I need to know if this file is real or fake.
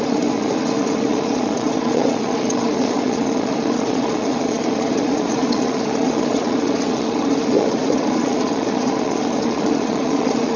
fake